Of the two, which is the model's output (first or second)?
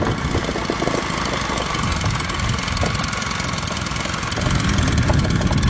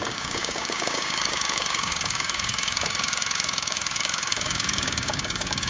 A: second